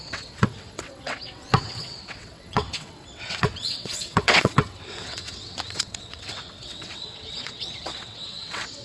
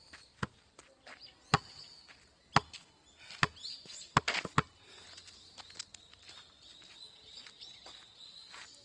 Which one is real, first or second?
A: second